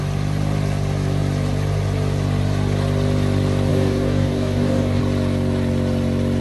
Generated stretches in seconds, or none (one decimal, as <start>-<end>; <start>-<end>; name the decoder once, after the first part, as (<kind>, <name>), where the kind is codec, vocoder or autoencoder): 3.7-5.0 (codec, DAC)